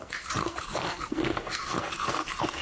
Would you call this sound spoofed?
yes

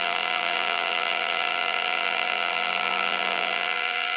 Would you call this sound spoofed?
yes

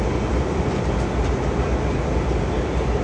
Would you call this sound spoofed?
no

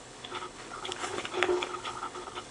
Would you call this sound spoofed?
yes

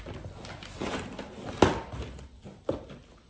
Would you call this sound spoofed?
no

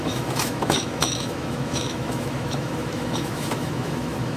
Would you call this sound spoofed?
yes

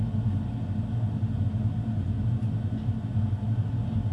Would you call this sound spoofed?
no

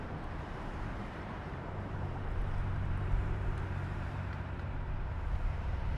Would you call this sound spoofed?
yes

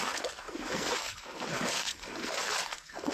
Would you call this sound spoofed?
yes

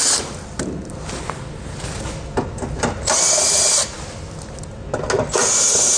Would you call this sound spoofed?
no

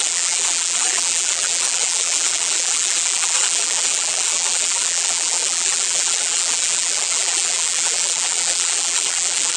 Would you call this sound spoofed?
yes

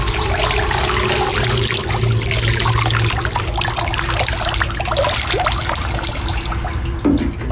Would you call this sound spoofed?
no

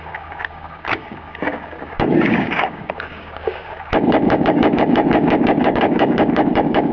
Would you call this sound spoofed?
yes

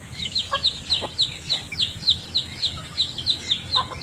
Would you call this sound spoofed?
yes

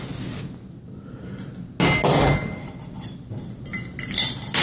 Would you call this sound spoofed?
no